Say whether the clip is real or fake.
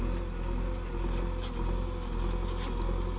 real